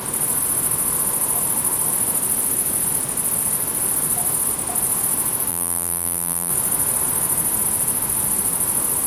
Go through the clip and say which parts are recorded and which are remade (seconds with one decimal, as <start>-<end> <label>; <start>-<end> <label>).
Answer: 0.0-5.5 recorded; 5.5-6.5 remade; 6.5-9.1 recorded